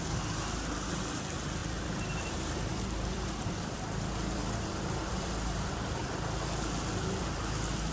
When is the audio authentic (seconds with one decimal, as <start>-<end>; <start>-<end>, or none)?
0.0-1.6; 5.7-7.9